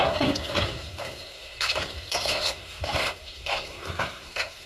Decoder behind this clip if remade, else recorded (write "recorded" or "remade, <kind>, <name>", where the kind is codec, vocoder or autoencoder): remade, codec, SNAC